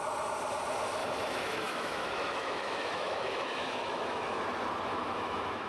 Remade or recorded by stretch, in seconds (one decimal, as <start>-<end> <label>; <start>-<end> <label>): 0.0-1.0 recorded; 1.0-4.4 remade; 4.4-4.9 recorded; 4.9-5.7 remade